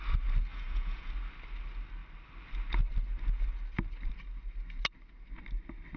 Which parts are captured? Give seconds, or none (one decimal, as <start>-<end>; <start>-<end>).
0.0-0.5; 1.1-6.0